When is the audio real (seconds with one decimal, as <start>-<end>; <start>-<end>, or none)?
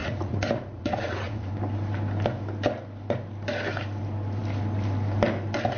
1.5-5.8